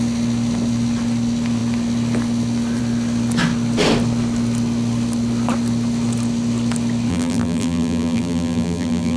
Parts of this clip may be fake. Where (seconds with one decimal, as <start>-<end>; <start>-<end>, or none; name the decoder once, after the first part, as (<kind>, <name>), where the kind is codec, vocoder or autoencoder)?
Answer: 7.1-9.2 (vocoder, BigVGAN v2)